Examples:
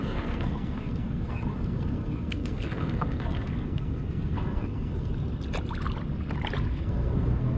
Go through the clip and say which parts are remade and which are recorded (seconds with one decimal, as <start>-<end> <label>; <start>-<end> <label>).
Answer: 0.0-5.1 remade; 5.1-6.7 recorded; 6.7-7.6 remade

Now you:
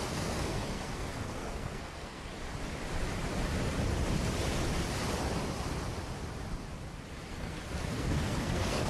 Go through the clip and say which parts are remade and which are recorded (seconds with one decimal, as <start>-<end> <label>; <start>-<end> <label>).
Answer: 0.0-2.3 remade; 2.3-7.3 recorded; 7.3-8.9 remade

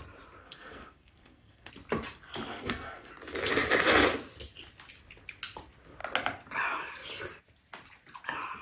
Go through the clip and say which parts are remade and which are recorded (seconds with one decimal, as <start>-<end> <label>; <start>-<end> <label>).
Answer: 0.0-0.4 recorded; 0.4-1.7 remade; 1.7-2.5 recorded; 2.5-3.1 remade; 3.1-8.6 recorded